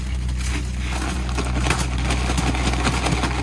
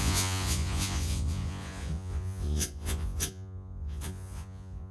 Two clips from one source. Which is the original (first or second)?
first